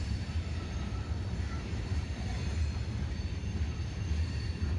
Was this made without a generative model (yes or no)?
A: no